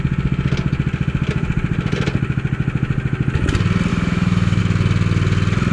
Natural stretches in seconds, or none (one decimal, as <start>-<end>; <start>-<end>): 0.0-3.9; 4.6-5.7

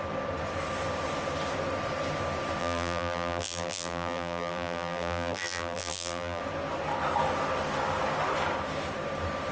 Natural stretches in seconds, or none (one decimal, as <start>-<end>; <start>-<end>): 0.0-2.6; 6.4-9.5